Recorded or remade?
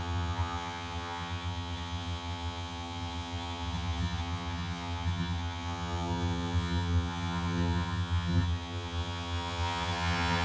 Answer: remade